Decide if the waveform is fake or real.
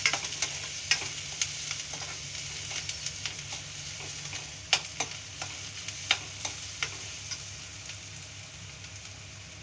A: real